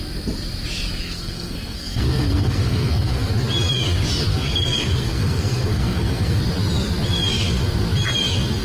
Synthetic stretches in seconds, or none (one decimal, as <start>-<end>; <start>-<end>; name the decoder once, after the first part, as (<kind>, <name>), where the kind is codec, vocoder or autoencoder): 1.0-3.3 (codec, SNAC); 4.3-6.4